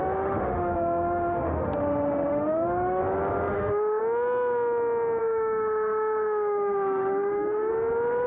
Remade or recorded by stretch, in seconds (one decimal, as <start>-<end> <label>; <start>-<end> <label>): 0.0-3.0 remade; 3.0-3.5 recorded; 3.5-4.0 remade; 4.0-5.2 recorded; 5.2-7.7 remade; 7.7-8.3 recorded

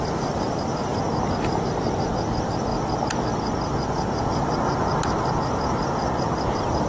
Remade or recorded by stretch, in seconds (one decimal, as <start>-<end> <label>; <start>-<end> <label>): 0.0-6.9 recorded

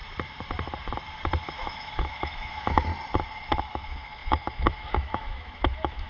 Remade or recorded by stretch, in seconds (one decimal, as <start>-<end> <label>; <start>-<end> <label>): 0.0-1.5 recorded; 1.5-2.9 remade; 2.9-3.6 recorded; 3.6-6.1 remade

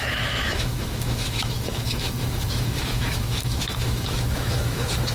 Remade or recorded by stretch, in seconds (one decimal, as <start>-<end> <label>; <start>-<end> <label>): 0.0-5.1 remade

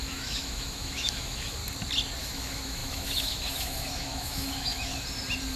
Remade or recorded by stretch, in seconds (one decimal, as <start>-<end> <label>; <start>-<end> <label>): 0.0-1.6 remade; 1.6-2.2 recorded; 2.2-4.9 remade; 4.9-5.6 recorded

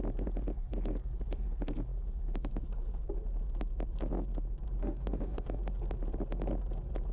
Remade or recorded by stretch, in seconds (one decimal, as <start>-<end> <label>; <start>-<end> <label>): 0.0-4.8 recorded; 4.8-5.6 remade; 5.6-7.1 recorded